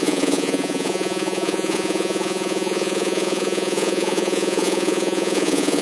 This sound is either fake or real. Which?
fake